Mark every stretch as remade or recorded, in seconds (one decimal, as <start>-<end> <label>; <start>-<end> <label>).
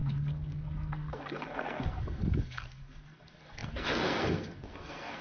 0.0-5.2 remade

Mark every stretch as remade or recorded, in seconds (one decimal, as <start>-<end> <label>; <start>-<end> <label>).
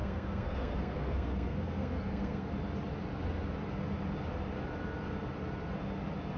0.0-2.5 remade; 2.5-6.4 recorded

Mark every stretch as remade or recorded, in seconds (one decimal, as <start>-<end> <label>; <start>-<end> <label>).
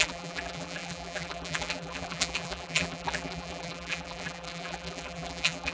0.0-5.7 remade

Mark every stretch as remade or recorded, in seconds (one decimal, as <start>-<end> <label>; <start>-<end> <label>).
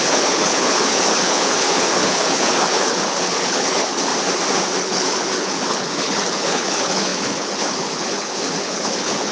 0.0-4.1 remade; 4.1-4.8 recorded; 4.8-9.3 remade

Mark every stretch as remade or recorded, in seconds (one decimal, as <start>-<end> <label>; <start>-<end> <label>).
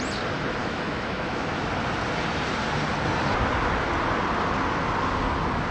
0.0-0.6 recorded; 0.6-1.6 remade; 1.6-5.7 recorded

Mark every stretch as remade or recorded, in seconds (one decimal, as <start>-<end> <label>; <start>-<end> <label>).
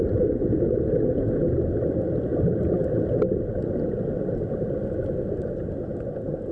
0.0-6.5 recorded